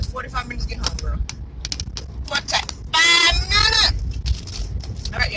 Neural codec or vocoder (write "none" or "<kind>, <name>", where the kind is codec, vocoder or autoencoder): none